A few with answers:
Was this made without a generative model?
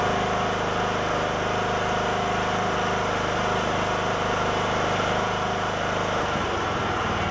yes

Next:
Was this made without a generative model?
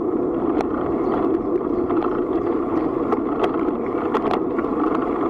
yes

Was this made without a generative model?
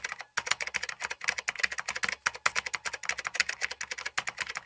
yes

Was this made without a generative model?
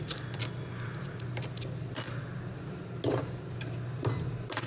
yes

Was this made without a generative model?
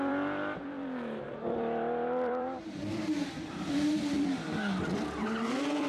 no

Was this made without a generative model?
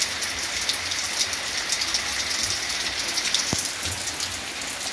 yes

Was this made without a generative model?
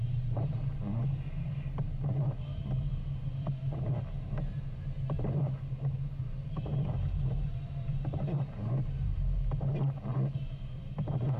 no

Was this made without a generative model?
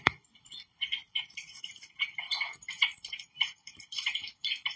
no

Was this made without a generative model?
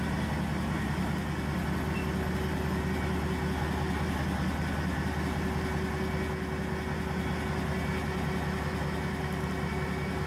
yes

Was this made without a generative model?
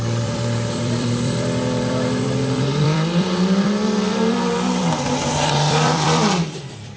no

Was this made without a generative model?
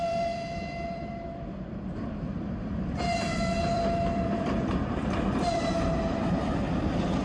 no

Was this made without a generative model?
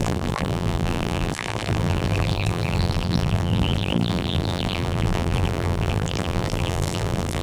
no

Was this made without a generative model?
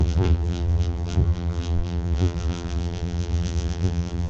no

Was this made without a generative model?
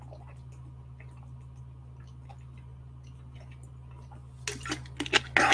yes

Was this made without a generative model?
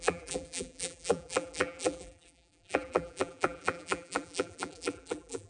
no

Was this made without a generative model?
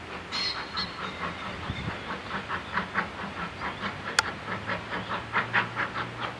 yes